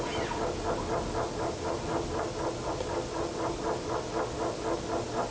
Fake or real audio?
real